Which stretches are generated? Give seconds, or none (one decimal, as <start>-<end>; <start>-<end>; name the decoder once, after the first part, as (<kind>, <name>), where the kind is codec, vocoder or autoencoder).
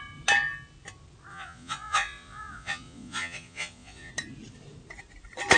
1.3-4.1 (vocoder, Vocos)